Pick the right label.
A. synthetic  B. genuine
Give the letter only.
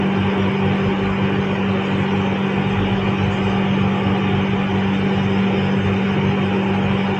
B